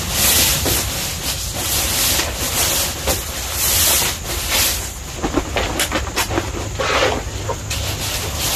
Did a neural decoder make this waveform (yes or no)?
no